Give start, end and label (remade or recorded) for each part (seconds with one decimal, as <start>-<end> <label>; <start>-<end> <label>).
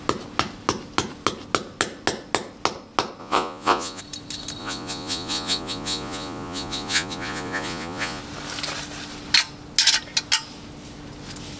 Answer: 0.0-3.2 recorded; 3.2-4.0 remade; 4.0-4.6 recorded; 4.6-8.2 remade; 8.2-11.6 recorded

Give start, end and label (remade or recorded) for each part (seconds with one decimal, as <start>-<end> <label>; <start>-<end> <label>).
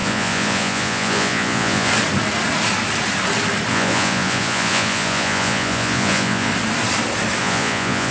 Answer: 0.0-1.9 remade; 1.9-3.7 recorded; 3.7-6.5 remade; 6.5-7.4 recorded; 7.4-8.1 remade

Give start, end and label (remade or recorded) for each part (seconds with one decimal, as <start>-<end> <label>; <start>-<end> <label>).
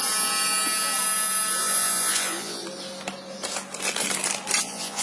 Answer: 0.0-1.6 recorded; 1.6-2.6 remade; 2.6-4.6 recorded; 4.6-5.0 remade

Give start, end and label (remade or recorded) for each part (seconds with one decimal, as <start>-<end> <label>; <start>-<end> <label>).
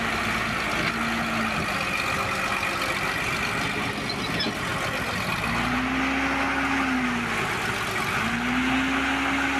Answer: 0.0-9.6 recorded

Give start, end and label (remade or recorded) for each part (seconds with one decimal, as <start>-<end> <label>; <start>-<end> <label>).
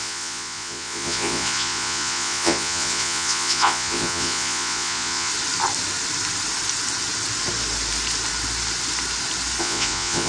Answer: 0.0-5.3 remade; 5.3-9.6 recorded; 9.6-10.3 remade